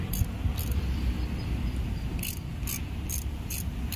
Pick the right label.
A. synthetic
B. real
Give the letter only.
B